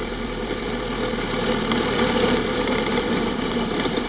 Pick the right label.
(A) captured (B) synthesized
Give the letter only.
B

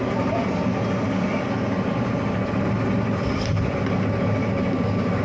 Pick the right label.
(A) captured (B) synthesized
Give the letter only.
A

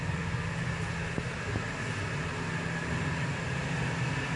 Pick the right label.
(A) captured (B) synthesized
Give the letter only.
A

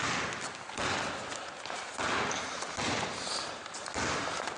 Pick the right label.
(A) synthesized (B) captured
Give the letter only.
B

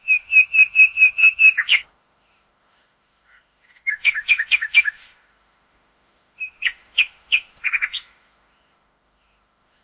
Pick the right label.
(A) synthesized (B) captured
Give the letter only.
A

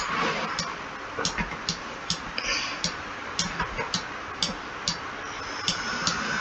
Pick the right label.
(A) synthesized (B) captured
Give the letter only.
B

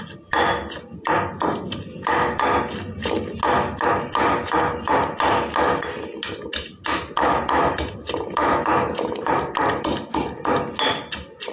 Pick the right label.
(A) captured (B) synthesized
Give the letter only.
A